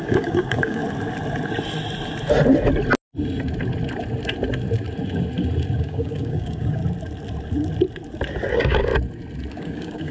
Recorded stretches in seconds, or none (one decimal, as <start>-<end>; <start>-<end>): 0.8-5.8; 6.8-8.5; 8.9-9.5